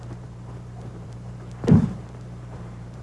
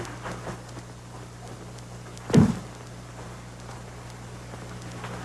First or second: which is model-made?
first